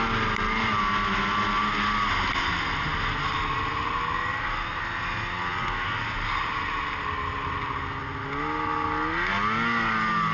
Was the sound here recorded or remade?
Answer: recorded